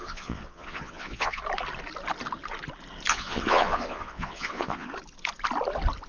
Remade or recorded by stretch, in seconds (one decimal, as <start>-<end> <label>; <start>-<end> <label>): 0.0-1.4 remade; 1.4-3.1 recorded; 3.1-4.9 remade; 4.9-6.1 recorded